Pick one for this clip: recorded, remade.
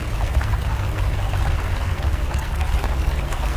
remade